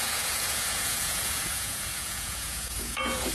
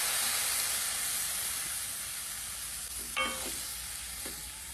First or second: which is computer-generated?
first